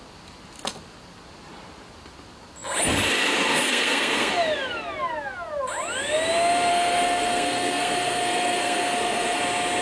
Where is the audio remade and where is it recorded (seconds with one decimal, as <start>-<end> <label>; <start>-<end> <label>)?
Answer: 0.0-3.5 recorded; 3.5-4.3 remade; 4.3-6.7 recorded; 6.7-9.4 remade; 9.4-9.8 recorded